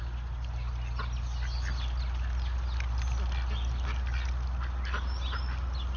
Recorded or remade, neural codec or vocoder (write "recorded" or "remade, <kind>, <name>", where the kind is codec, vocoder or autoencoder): recorded